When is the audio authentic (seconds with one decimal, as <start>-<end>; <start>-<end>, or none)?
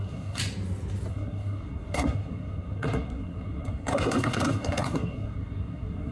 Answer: 0.4-1.1